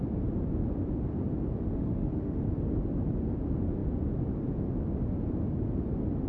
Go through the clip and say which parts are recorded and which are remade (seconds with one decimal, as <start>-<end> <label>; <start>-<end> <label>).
0.0-1.7 recorded; 1.7-2.4 remade; 2.4-6.3 recorded